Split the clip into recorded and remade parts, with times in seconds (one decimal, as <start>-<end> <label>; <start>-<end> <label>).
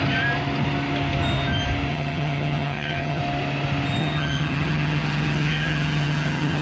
0.0-1.9 recorded; 1.9-3.2 remade; 3.2-4.0 recorded; 4.0-6.6 remade